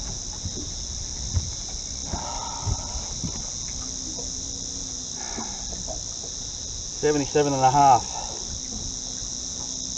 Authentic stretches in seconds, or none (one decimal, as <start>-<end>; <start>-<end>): 0.0-10.0